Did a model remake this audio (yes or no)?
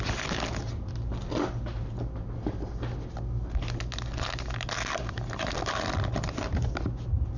no